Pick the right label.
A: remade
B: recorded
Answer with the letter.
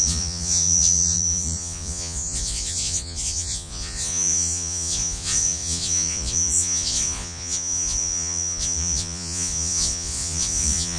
A